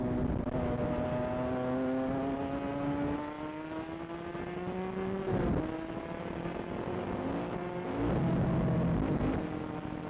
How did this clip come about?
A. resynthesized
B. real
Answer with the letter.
B